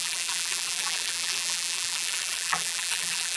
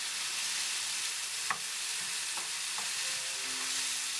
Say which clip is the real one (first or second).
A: second